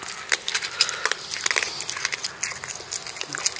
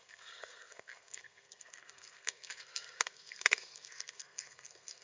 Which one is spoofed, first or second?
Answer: second